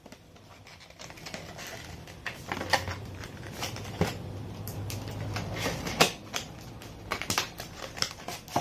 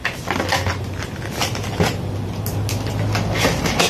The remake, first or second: first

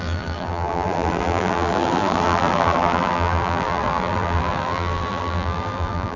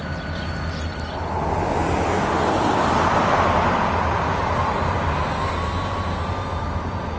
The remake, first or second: first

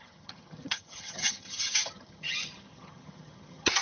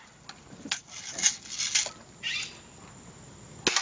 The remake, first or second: first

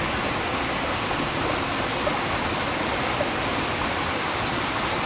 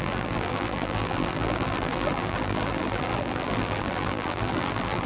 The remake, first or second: second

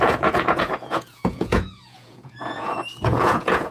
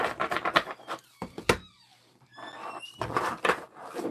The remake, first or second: first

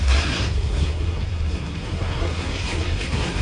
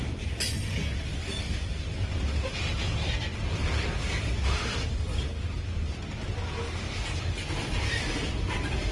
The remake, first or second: first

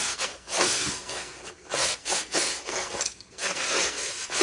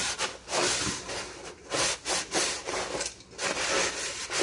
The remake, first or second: first